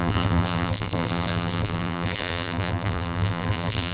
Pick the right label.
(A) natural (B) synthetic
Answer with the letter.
B